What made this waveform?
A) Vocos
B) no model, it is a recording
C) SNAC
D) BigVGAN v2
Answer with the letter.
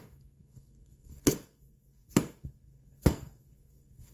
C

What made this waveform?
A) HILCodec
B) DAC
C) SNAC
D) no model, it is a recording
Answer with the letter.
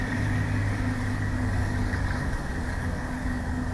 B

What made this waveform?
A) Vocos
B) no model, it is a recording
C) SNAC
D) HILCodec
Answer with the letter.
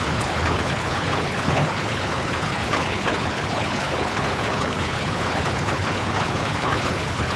D